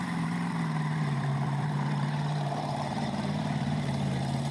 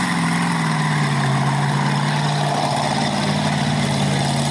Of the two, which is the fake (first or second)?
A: first